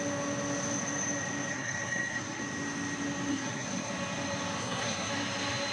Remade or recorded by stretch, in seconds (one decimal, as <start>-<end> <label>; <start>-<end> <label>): 0.0-1.5 recorded; 1.5-2.4 remade; 2.4-3.3 recorded; 3.3-3.9 remade; 3.9-4.6 recorded; 4.6-5.1 remade; 5.1-5.7 recorded